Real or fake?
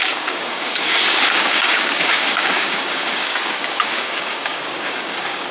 fake